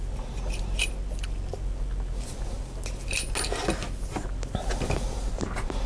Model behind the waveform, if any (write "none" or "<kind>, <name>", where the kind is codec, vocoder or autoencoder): none